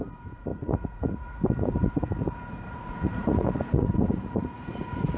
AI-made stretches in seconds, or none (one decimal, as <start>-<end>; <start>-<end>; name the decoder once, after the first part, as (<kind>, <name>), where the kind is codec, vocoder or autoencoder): 0.0-5.2 (vocoder, Vocos)